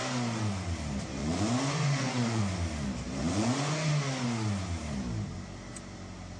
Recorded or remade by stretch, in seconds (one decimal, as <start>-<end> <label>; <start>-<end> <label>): 0.0-1.2 recorded; 1.2-2.4 remade; 2.4-3.2 recorded; 3.2-3.9 remade; 3.9-6.4 recorded